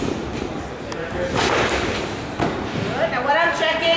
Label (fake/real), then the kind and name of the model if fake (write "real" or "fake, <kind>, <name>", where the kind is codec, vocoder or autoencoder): real